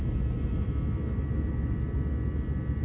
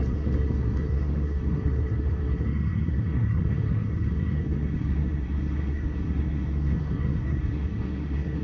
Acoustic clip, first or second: first